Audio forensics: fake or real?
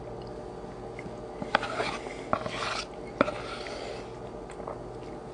real